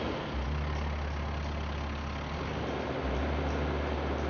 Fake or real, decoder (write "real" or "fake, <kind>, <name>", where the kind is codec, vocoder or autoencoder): real